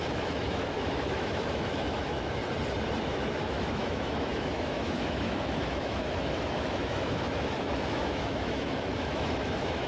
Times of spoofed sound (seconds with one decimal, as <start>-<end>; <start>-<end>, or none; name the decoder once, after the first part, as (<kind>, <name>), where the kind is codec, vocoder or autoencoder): 0.0-2.4 (autoencoder, DAC-VAE); 3.0-9.9